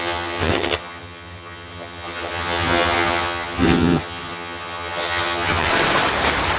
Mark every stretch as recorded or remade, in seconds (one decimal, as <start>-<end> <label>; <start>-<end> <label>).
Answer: 0.0-5.7 remade; 5.7-6.6 recorded